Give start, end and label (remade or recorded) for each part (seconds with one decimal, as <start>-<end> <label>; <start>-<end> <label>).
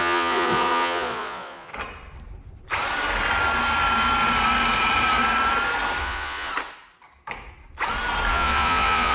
0.0-1.7 remade; 1.7-6.0 recorded; 6.0-6.5 remade; 6.5-8.3 recorded; 8.3-9.1 remade